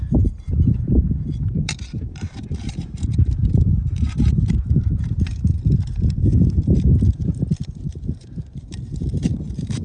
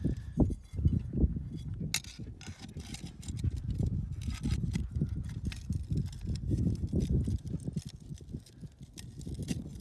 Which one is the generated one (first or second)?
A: first